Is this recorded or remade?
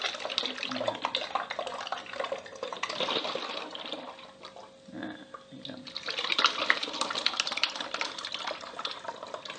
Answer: recorded